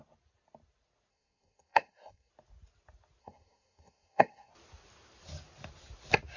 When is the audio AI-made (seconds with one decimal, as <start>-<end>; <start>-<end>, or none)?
1.1-2.3; 3.2-4.5